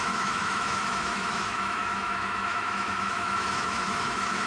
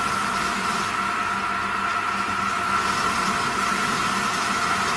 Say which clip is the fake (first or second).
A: first